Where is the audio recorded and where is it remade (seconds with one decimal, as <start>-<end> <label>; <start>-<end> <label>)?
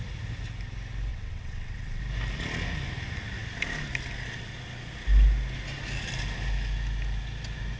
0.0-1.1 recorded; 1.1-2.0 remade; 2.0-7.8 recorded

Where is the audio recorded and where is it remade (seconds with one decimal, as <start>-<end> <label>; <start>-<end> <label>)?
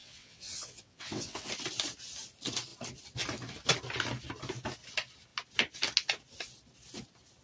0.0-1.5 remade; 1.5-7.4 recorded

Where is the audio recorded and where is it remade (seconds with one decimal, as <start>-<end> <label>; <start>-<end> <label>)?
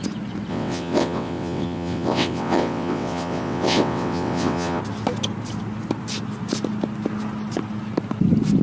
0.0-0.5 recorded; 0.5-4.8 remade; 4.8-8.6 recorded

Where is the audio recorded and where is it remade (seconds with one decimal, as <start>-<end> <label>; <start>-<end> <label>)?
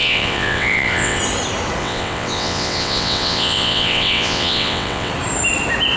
0.0-1.2 remade; 1.2-1.8 recorded; 1.8-5.1 remade; 5.1-6.0 recorded